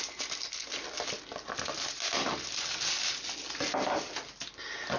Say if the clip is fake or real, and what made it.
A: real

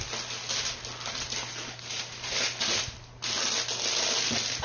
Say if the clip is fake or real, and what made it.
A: real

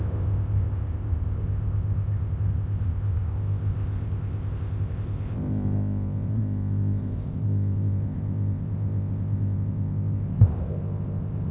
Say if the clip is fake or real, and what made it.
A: fake, codec, ZipCodec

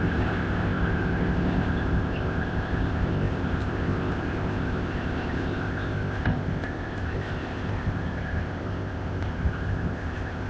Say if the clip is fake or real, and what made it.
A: fake, codec, ZipCodec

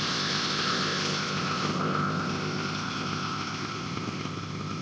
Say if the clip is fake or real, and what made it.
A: fake, codec, ZipCodec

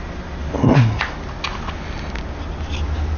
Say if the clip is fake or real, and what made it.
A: real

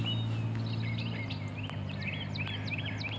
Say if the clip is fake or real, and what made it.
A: real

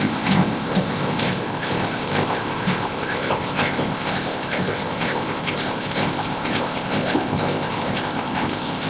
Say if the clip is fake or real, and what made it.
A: fake, codec, ZipCodec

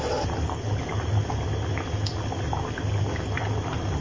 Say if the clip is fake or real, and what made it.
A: real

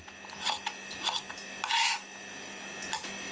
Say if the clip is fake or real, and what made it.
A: real